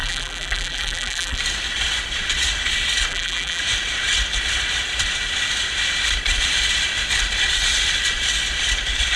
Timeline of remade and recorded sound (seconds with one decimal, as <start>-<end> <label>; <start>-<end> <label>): 0.0-1.4 remade; 1.4-3.1 recorded; 3.1-3.6 remade; 3.6-9.2 recorded